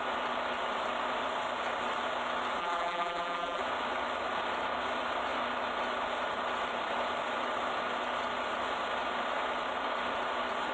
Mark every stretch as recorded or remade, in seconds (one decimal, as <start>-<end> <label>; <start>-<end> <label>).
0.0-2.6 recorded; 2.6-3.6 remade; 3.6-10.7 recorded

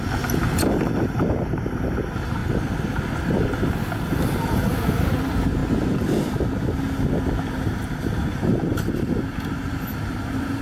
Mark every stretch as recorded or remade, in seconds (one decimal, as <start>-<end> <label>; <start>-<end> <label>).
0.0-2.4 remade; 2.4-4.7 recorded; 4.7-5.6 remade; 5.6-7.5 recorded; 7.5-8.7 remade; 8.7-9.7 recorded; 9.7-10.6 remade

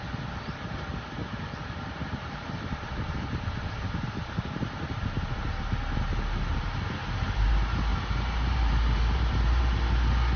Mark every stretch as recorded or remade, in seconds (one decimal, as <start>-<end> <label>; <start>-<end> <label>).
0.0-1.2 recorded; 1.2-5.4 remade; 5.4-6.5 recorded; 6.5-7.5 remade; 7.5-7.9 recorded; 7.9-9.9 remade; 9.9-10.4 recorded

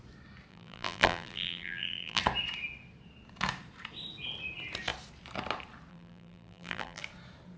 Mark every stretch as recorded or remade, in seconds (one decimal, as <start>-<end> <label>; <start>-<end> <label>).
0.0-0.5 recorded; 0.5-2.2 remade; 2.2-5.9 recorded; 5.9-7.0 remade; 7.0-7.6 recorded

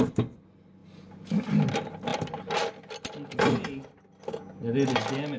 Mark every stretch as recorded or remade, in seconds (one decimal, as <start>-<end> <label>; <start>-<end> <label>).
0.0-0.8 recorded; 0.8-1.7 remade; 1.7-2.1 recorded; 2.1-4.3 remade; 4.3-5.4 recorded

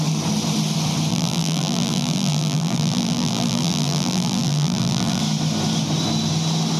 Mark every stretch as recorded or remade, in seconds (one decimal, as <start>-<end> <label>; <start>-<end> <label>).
0.0-1.1 recorded; 1.1-5.2 remade; 5.2-6.8 recorded